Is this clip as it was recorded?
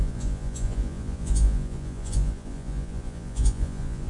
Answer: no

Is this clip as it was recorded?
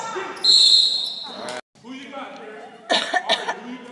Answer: yes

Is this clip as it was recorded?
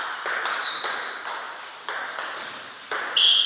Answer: yes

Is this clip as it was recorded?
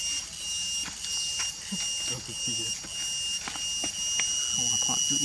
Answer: yes